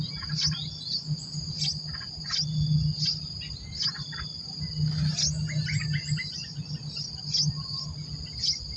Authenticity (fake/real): real